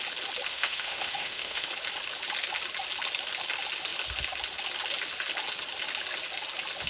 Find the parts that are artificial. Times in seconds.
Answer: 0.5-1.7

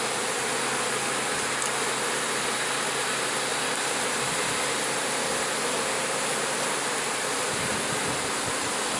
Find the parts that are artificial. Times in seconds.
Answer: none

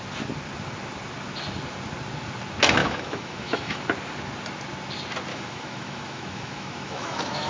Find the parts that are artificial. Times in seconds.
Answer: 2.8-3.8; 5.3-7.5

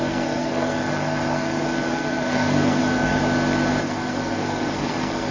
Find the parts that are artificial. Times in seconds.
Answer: 0.0-3.2; 3.8-5.3